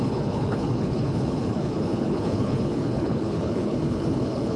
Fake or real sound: fake